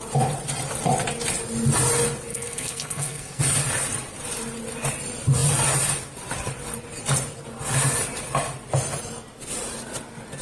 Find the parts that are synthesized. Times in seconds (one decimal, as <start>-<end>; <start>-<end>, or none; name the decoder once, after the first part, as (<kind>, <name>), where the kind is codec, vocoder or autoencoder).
2.3-3.4 (codec, SNAC)

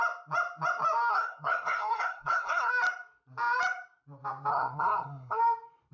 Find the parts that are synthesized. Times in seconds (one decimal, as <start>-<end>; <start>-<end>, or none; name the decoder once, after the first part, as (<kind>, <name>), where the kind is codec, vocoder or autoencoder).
1.1-2.7 (codec, SNAC); 4.5-5.4

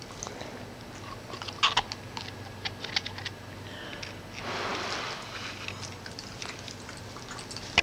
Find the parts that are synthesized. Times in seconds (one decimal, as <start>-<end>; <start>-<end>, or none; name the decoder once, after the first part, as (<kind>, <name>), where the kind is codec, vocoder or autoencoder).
none

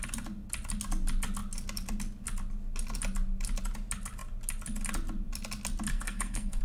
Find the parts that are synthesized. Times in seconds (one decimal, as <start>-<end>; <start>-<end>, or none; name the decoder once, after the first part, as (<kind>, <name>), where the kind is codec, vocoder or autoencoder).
5.9-6.6 (codec, SNAC)